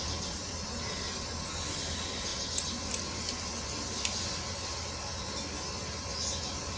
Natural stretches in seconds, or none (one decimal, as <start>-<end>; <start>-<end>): 2.3-6.3